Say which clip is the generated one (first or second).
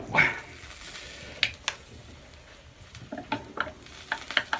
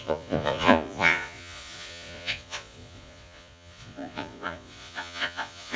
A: second